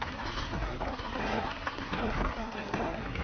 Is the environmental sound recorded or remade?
remade